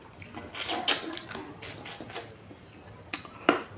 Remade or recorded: recorded